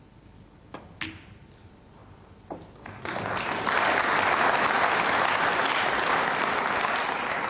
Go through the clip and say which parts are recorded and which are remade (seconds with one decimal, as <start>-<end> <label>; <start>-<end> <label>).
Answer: 0.0-7.5 recorded